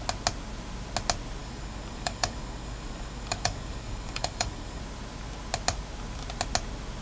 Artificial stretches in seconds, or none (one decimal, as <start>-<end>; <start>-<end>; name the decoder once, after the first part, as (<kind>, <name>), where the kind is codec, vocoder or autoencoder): 1.4-4.8 (codec, DAC)